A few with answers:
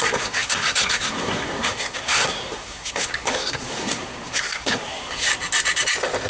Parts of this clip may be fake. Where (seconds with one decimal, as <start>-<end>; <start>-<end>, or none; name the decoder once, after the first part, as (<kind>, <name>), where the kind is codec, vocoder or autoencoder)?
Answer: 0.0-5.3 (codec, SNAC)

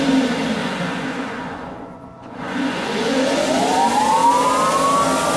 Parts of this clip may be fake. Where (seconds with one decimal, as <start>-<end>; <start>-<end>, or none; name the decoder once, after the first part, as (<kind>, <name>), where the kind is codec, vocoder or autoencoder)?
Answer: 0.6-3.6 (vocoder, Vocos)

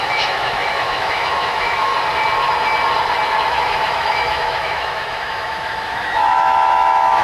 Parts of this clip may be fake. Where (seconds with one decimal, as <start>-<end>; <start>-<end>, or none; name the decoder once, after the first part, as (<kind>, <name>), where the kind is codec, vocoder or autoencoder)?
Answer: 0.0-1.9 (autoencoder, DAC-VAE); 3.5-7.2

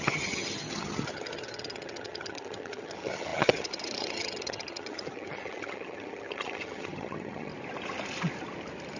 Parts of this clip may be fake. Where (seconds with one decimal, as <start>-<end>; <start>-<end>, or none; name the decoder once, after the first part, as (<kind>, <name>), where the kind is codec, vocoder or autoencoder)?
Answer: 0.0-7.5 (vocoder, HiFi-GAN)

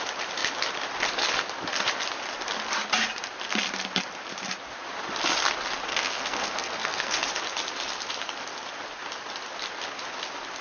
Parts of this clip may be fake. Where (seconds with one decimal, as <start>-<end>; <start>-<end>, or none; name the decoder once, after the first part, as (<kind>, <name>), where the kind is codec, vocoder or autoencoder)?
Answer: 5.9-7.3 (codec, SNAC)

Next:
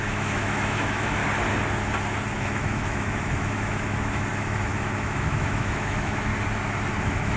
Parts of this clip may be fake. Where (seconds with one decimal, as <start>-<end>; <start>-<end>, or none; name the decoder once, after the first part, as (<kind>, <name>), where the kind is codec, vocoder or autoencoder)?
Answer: 0.0-1.2 (autoencoder, DAC-VAE); 2.4-6.3; 7.0-7.4

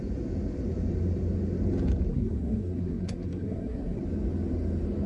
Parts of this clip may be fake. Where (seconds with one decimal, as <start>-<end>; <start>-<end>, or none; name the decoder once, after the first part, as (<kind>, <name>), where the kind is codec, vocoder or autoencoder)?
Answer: 2.1-4.0 (codec, SNAC)

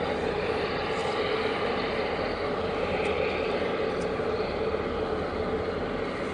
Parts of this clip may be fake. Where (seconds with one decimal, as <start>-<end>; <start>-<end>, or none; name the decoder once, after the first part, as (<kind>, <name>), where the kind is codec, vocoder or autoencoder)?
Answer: none